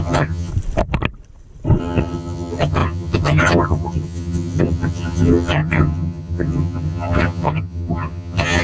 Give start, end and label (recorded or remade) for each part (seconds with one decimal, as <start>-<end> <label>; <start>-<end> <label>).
0.0-0.5 remade; 0.5-1.8 recorded; 1.8-8.6 remade